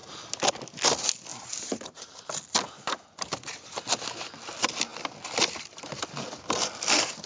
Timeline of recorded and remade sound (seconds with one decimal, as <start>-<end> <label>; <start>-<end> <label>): 0.0-0.5 remade; 0.5-1.3 recorded; 1.3-2.0 remade; 2.0-7.3 recorded